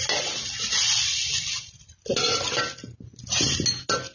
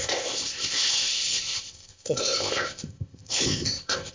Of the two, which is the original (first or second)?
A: first